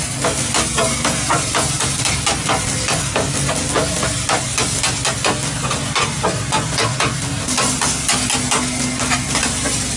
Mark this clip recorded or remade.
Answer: recorded